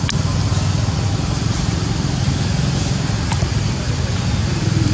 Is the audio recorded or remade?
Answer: recorded